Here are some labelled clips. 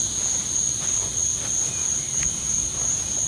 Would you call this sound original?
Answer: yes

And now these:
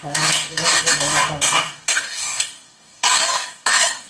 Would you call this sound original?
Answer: no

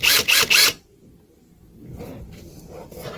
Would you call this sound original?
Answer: no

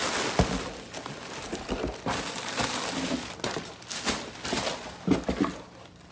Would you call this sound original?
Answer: yes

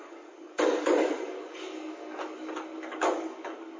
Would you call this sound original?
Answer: no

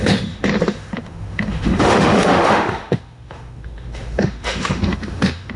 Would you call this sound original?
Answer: no